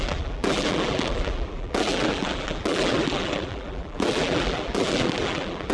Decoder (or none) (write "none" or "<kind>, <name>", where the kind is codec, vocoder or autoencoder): vocoder, BigVGAN v2